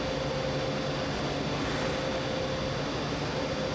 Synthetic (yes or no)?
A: no